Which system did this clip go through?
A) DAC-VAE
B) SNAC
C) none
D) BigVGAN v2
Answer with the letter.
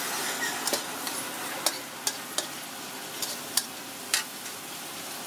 C